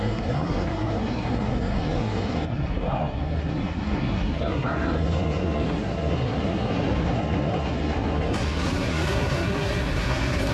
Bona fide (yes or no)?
no